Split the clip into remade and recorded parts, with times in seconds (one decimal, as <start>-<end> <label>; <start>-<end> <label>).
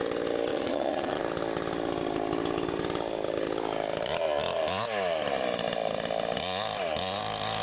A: 0.0-0.5 recorded; 0.5-1.2 remade; 1.2-7.6 recorded